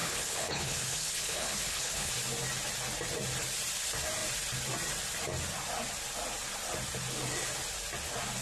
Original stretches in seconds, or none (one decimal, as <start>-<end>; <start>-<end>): 2.1-8.4